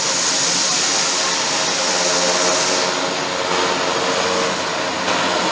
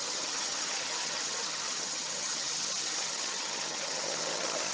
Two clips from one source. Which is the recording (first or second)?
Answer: first